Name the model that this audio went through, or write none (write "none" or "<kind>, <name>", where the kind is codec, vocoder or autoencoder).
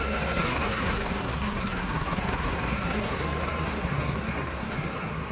codec, SNAC